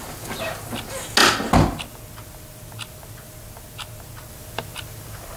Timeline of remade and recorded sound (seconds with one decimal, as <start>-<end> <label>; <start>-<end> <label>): 0.0-5.4 recorded